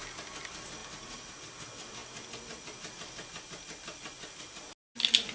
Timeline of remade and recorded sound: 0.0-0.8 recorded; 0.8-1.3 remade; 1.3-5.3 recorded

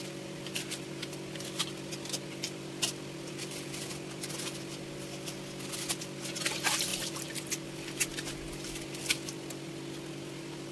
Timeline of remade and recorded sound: 0.0-10.7 recorded

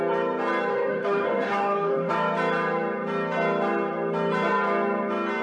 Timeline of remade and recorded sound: 0.0-0.7 recorded; 0.7-2.1 remade; 2.1-5.4 recorded

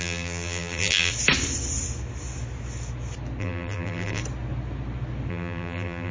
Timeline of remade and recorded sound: 0.0-1.1 remade; 1.1-3.4 recorded; 3.4-4.2 remade; 4.2-5.3 recorded; 5.3-6.1 remade

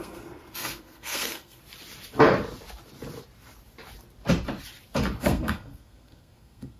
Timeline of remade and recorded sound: 0.0-1.6 remade; 1.6-5.2 recorded; 5.2-6.8 remade

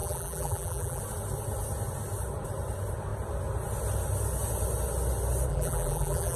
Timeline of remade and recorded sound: 0.0-1.0 remade; 1.0-5.5 recorded; 5.5-6.4 remade

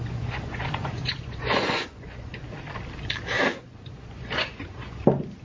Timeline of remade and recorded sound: 0.0-2.4 remade; 2.4-3.6 recorded; 3.6-5.0 remade; 5.0-5.4 recorded